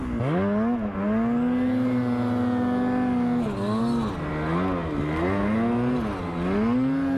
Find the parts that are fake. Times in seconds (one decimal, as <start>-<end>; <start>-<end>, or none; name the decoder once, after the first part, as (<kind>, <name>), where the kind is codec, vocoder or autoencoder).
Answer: none